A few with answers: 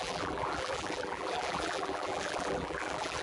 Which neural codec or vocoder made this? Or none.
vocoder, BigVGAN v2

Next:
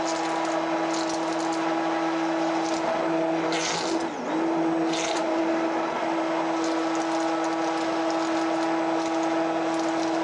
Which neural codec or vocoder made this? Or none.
none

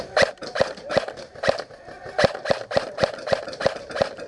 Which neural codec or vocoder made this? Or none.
none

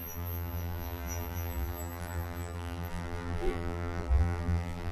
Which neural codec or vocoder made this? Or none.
vocoder, BigVGAN v2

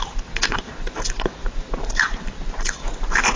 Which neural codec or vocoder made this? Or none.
vocoder, BigVGAN v2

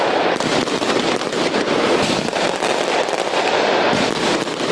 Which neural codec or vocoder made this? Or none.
vocoder, BigVGAN v2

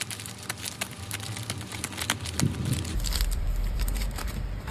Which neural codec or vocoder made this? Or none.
vocoder, BigVGAN v2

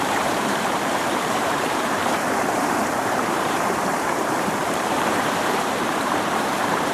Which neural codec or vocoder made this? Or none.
vocoder, BigVGAN v2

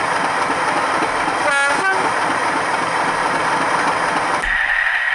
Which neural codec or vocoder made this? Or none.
none